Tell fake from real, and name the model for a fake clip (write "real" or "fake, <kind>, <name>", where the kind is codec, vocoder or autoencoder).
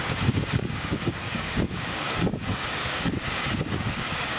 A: fake, codec, DAC